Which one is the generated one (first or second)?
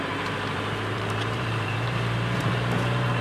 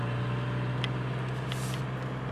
first